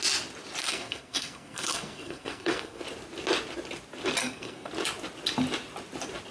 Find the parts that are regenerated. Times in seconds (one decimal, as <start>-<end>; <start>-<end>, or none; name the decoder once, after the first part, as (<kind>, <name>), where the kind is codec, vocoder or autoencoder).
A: 0.6-2.8 (codec, SNAC); 4.2-4.7